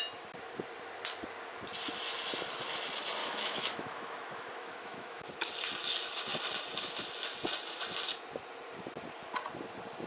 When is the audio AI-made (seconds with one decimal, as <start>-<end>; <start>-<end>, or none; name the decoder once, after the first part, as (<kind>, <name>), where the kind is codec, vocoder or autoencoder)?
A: 3.2-5.5 (autoencoder, DAC-VAE)